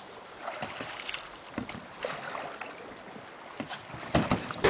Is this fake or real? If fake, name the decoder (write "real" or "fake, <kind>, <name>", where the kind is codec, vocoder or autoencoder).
real